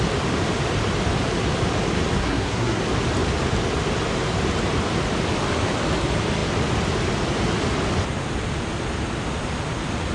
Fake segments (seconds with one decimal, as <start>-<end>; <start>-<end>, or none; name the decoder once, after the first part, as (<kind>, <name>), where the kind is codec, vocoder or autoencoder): 2.2-2.8 (codec, SNAC)